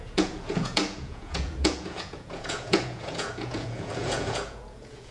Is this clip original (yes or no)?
no